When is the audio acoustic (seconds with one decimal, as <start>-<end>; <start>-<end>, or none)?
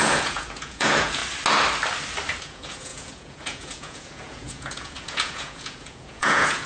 1.2-2.4